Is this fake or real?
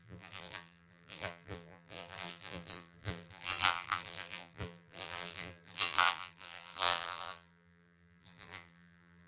fake